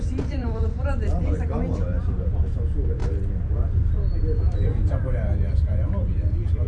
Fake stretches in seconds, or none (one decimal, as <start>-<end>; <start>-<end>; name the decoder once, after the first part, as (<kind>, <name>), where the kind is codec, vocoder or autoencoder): 0.0-3.0 (vocoder, BigVGAN v2); 4.2-5.7